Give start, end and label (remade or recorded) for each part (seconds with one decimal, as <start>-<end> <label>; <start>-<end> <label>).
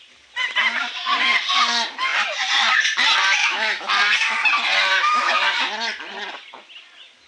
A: 0.0-3.4 recorded; 3.4-3.9 remade; 3.9-4.9 recorded; 4.9-5.4 remade; 5.4-7.3 recorded